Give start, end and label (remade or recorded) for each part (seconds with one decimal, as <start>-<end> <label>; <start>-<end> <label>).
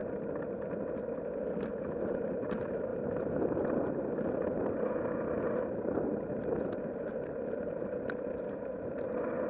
0.0-9.5 recorded